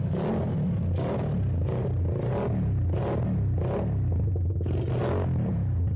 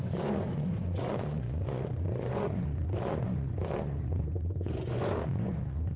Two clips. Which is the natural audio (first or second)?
first